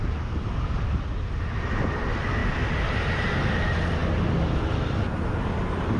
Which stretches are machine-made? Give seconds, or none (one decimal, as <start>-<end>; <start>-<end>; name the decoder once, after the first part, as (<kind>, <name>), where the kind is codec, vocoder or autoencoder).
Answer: none